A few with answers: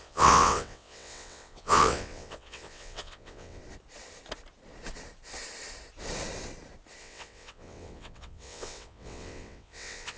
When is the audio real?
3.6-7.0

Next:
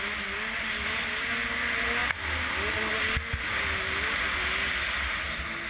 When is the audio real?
0.0-5.7